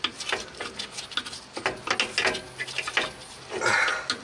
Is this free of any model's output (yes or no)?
yes